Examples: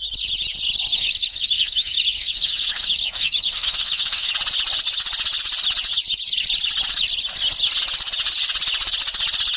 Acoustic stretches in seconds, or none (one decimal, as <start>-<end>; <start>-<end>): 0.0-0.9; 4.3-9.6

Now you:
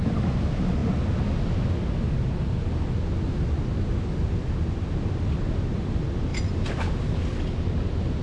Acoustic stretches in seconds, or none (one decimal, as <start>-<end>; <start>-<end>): 0.0-8.2

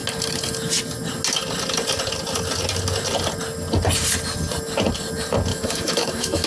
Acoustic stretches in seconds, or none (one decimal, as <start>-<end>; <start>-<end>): 0.0-5.5